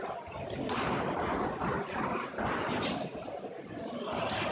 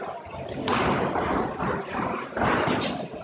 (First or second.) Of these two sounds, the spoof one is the first